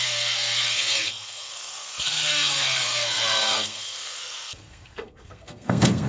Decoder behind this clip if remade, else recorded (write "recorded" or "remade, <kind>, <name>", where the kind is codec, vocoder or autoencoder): remade, codec, SNAC